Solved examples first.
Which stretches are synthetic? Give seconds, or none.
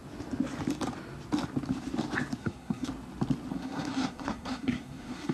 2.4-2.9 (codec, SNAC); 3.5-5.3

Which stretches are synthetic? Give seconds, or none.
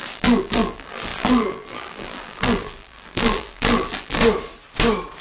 0.0-4.2 (vocoder, BigVGAN v2)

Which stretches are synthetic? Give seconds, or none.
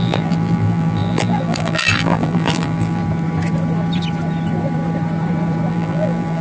0.0-3.0 (vocoder, BigVGAN v2); 5.7-6.4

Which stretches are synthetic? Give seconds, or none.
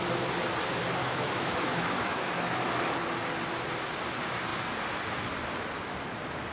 1.0-2.7 (autoencoder, DAC-VAE)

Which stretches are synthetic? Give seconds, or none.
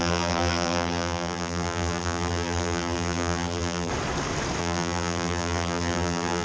0.0-3.9 (vocoder, BigVGAN v2); 4.6-6.4